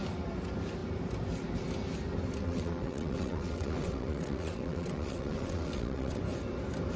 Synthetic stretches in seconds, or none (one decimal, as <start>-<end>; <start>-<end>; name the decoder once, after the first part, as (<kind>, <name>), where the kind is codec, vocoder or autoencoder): 2.4-6.2 (vocoder, WaveNeXt)